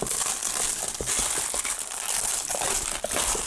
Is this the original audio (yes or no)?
yes